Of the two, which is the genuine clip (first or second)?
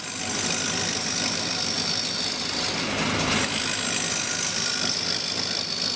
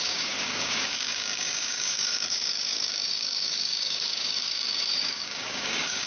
first